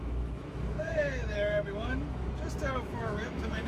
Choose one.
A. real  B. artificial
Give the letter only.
B